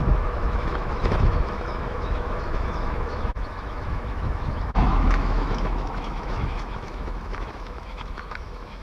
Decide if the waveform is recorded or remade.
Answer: remade